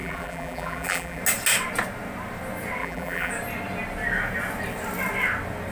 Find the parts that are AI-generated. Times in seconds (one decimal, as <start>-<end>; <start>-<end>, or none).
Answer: 0.0-1.2; 2.8-3.3